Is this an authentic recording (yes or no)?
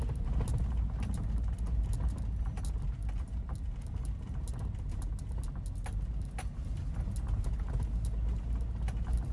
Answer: yes